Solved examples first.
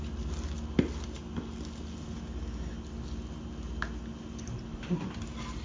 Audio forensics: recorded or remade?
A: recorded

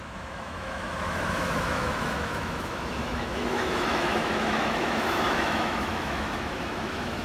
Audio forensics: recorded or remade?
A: remade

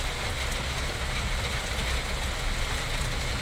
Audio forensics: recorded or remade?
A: recorded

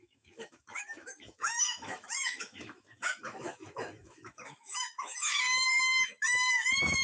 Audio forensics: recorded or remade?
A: remade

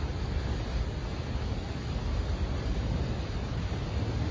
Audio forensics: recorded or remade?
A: recorded